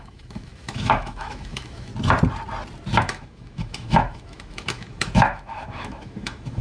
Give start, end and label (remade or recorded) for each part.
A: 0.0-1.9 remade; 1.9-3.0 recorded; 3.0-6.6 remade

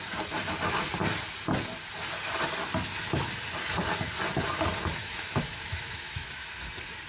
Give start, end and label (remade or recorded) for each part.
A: 0.0-5.0 recorded; 5.0-6.6 remade; 6.6-7.1 recorded

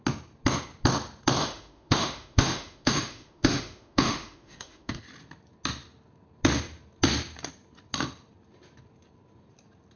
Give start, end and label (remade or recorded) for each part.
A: 0.0-1.4 recorded; 1.4-5.0 remade; 5.0-10.0 recorded

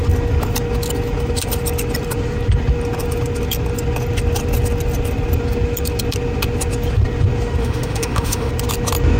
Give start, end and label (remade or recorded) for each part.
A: 0.0-7.6 recorded; 7.6-8.5 remade; 8.5-9.2 recorded

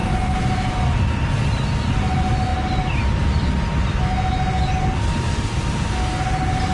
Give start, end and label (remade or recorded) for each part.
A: 0.0-6.7 recorded

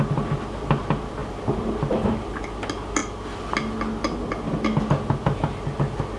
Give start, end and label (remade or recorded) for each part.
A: 0.0-6.2 recorded

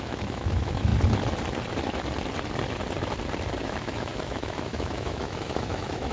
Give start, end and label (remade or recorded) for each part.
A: 0.0-0.9 remade; 0.9-3.6 recorded; 3.6-6.1 remade